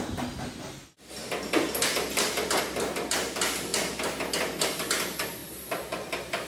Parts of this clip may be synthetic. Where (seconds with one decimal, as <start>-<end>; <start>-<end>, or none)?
none